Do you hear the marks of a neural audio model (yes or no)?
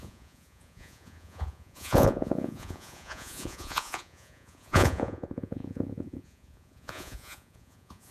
yes